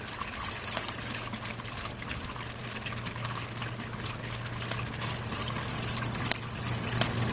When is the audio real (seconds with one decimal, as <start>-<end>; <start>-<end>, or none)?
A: 0.0-7.3